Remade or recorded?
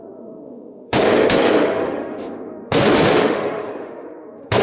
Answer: remade